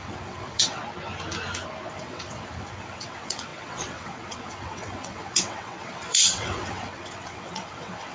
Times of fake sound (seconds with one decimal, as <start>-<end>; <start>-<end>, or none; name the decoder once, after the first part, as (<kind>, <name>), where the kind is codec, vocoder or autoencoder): 0.0-0.8 (vocoder, WaveNeXt); 1.9-8.1